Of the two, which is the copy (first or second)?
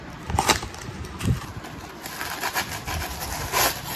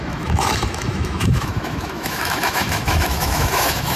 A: second